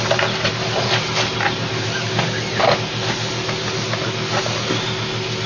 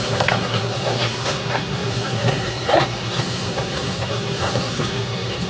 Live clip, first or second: first